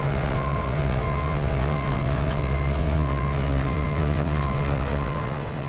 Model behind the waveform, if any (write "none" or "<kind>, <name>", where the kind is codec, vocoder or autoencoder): vocoder, WaveNeXt